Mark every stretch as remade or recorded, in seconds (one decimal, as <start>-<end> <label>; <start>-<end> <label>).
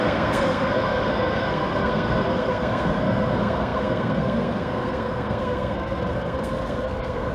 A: 0.0-7.3 remade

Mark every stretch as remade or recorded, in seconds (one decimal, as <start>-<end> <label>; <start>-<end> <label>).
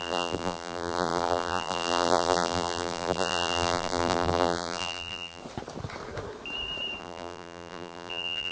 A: 0.0-5.4 remade; 5.4-7.0 recorded; 7.0-8.5 remade